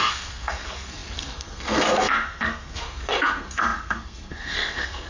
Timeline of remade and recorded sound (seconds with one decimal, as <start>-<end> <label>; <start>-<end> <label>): 0.0-5.1 remade